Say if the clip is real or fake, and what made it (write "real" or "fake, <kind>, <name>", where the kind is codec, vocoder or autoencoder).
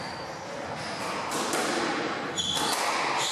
real